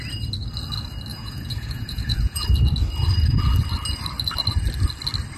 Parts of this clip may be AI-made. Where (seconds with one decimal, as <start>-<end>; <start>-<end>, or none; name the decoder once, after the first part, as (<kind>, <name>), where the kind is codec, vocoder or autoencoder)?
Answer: 1.1-2.4 (vocoder, Vocos)